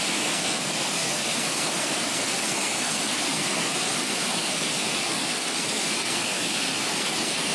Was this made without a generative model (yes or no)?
no